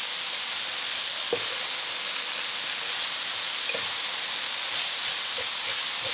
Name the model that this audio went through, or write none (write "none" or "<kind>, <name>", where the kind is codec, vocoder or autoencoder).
none